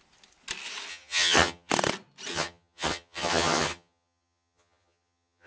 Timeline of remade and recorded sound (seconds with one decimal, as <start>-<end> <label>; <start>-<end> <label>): 0.0-0.9 recorded; 0.9-1.7 remade; 1.7-2.3 recorded; 2.3-5.5 remade